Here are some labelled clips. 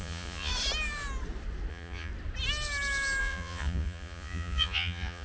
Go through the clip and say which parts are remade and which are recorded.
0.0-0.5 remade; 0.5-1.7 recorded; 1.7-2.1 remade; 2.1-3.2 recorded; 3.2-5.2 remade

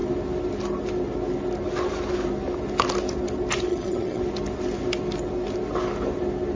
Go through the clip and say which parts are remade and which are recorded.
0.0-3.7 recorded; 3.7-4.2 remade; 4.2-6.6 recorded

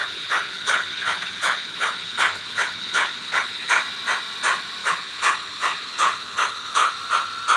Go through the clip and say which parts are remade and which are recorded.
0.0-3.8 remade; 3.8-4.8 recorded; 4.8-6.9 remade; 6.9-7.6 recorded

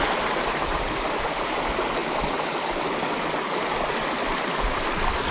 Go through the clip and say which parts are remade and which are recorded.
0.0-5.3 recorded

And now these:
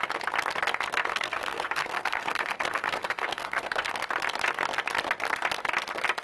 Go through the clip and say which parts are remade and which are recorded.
0.0-1.1 recorded; 1.1-3.9 remade; 3.9-6.2 recorded

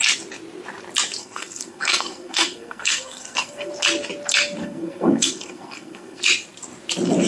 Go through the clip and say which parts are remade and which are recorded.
0.0-1.2 recorded; 1.2-3.7 remade; 3.7-4.6 recorded; 4.6-6.2 remade; 6.2-7.3 recorded

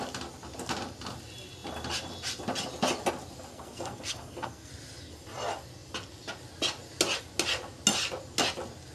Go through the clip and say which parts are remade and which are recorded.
0.0-3.5 recorded; 3.5-4.7 remade; 4.7-8.9 recorded

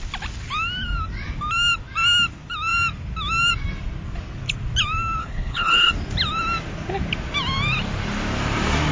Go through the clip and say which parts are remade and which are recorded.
0.0-5.2 recorded; 5.2-5.9 remade; 5.9-8.9 recorded